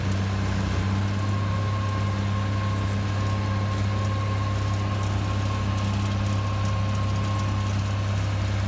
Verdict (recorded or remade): recorded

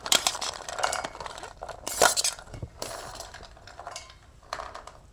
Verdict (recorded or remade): remade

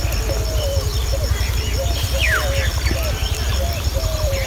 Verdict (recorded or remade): recorded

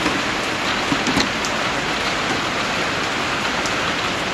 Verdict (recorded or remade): recorded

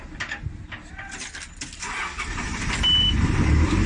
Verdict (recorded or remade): remade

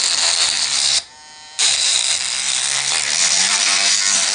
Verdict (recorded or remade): remade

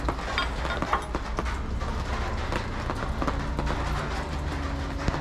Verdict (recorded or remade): recorded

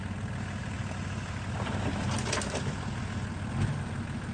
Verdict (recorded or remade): recorded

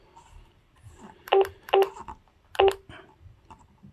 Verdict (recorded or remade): recorded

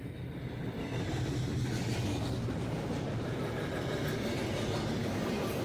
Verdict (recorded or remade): recorded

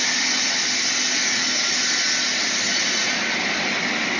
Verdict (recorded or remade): recorded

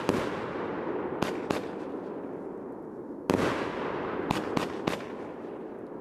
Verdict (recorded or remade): recorded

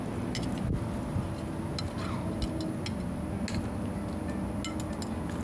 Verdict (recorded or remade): recorded